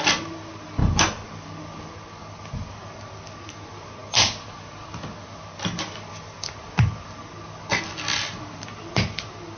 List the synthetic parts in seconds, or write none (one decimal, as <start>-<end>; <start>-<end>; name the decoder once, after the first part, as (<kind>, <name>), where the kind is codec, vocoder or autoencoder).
none